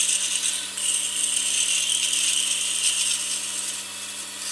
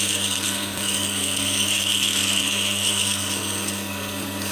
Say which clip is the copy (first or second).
second